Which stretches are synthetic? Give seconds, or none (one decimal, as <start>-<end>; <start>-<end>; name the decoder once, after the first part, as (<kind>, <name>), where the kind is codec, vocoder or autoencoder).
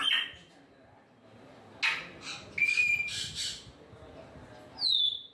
2.8-3.7 (vocoder, BigVGAN v2)